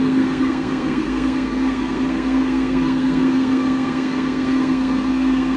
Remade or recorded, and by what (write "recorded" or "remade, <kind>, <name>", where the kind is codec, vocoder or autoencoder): remade, codec, SNAC